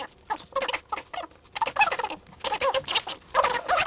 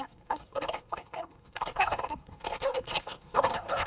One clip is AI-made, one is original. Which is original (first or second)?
first